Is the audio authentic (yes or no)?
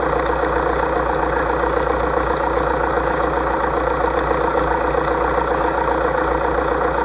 yes